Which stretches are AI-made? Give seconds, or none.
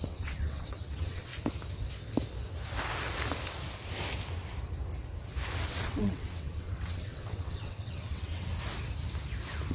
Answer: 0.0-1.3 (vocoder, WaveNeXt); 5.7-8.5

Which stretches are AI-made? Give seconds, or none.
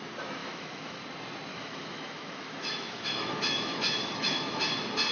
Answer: 0.4-1.0 (autoencoder, DAC-VAE); 1.5-4.6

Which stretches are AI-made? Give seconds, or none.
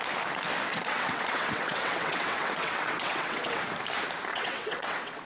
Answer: 0.7-3.6 (vocoder, WaveNeXt); 4.3-5.2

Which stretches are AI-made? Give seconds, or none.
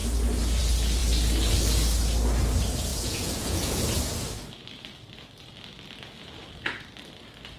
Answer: 2.9-3.8 (vocoder, Vocos)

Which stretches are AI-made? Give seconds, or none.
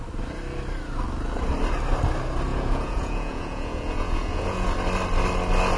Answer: 2.5-4.7 (vocoder, Vocos)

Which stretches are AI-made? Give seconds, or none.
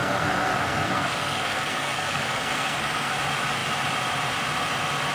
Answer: 0.0-3.1 (codec, SNAC)